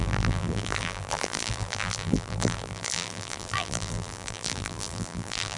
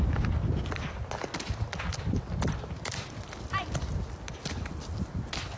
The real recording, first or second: second